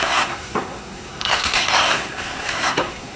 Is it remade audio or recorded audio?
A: remade